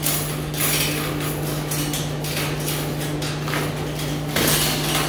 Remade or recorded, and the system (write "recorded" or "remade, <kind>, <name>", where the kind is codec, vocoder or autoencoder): recorded